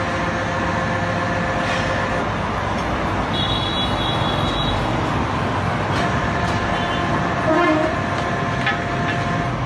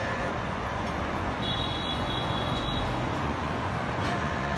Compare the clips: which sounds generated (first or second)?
second